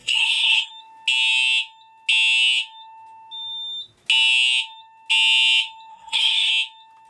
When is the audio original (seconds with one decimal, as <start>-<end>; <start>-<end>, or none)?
0.7-5.9; 6.5-7.1